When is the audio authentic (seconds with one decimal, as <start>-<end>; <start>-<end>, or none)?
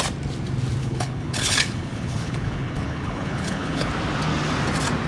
0.0-0.8; 3.9-5.1